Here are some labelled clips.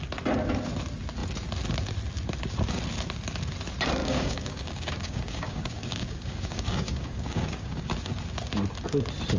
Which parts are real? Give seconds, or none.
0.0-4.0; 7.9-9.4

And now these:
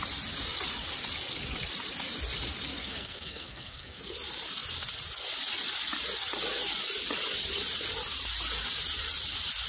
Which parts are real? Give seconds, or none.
0.0-2.8; 4.0-9.7

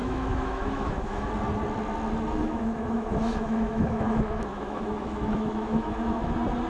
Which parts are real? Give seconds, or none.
1.3-2.4; 6.3-6.7